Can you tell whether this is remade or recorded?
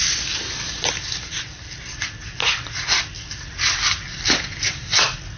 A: recorded